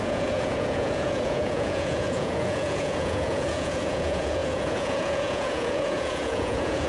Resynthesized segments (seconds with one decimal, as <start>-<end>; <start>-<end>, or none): 0.0-6.9